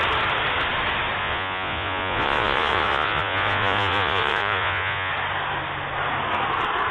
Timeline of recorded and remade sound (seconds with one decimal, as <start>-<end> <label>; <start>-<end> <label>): 0.0-1.2 recorded; 1.2-5.1 remade; 5.1-6.9 recorded

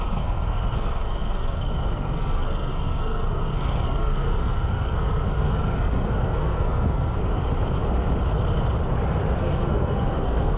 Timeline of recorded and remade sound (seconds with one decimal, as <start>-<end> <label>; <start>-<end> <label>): 0.0-7.2 remade; 7.2-9.4 recorded; 9.4-10.6 remade

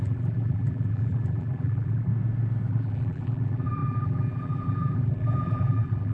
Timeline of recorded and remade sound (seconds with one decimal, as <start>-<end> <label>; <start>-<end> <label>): 0.0-2.1 remade; 2.1-2.7 recorded; 2.7-6.1 remade

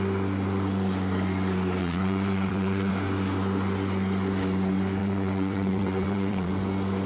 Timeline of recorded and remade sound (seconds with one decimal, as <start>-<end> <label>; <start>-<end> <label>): 0.0-1.8 recorded; 1.8-2.9 remade; 2.9-5.0 recorded; 5.0-6.5 remade; 6.5-7.1 recorded

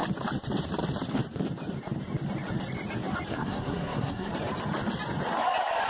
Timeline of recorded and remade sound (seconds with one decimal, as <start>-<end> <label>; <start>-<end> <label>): 0.0-3.3 recorded; 3.3-4.3 remade; 4.3-5.9 recorded

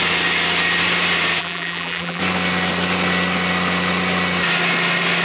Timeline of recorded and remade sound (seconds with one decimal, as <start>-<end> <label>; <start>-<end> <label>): 0.0-1.4 recorded; 1.4-2.2 remade; 2.2-5.2 recorded